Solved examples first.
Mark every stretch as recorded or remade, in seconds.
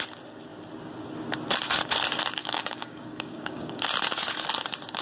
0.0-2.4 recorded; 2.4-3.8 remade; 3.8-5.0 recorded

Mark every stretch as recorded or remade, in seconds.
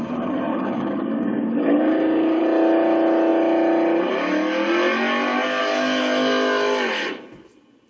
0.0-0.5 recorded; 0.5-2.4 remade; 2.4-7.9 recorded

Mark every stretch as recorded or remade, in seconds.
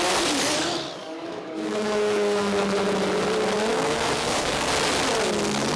0.0-1.0 recorded; 1.0-2.6 remade; 2.6-3.7 recorded; 3.7-4.7 remade; 4.7-5.8 recorded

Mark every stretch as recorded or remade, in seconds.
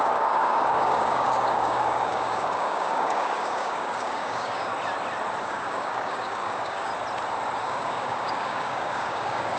0.0-4.7 remade; 4.7-5.4 recorded; 5.4-6.9 remade; 6.9-7.6 recorded; 7.6-9.6 remade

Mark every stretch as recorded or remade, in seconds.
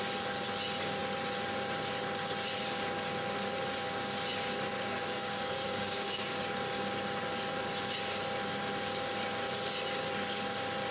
0.0-4.7 recorded; 4.7-6.4 remade; 6.4-10.9 recorded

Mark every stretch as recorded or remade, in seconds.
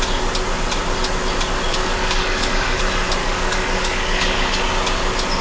0.0-1.7 recorded; 1.7-2.8 remade; 2.8-3.2 recorded; 3.2-4.6 remade; 4.6-5.4 recorded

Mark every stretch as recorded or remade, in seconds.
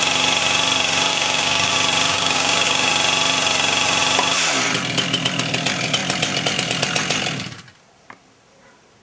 0.0-1.1 recorded; 1.1-1.7 remade; 1.7-2.1 recorded; 2.1-2.9 remade; 2.9-9.0 recorded